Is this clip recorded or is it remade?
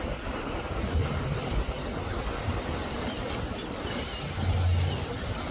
recorded